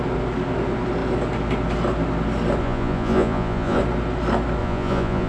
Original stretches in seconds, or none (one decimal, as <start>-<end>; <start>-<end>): 0.0-2.6; 3.8-4.6